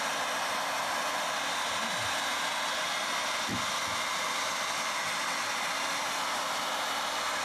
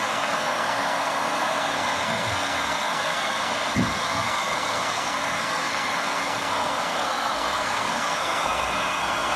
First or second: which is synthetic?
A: second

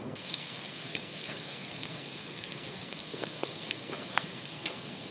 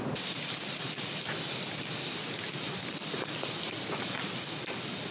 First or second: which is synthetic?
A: first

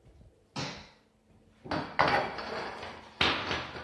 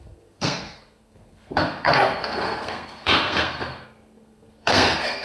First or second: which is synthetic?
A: second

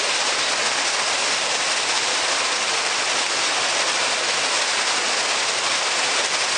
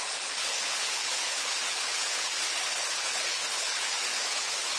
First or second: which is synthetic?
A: second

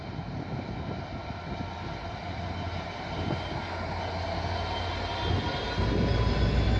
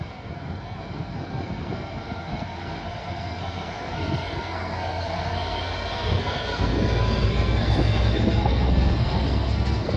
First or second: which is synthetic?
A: second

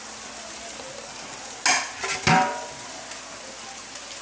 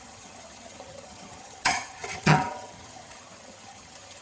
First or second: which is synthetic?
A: second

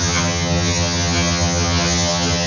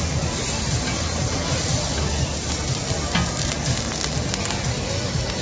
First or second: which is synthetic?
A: first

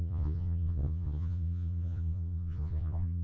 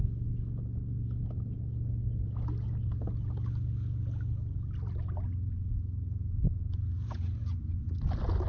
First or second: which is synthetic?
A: first